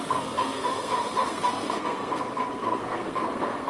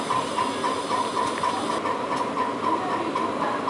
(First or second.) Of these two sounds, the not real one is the first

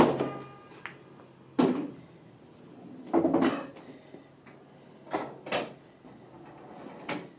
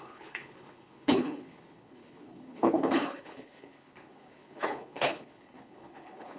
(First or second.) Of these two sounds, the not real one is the second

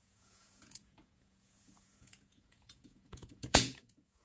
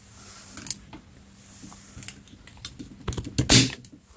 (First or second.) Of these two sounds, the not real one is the first